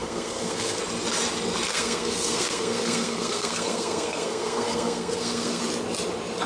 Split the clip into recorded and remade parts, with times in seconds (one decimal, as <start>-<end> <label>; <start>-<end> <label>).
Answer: 0.0-0.8 remade; 0.8-1.7 recorded; 1.7-5.6 remade; 5.6-6.5 recorded